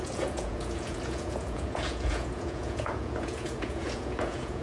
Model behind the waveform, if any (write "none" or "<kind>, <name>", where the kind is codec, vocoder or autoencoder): vocoder, Vocos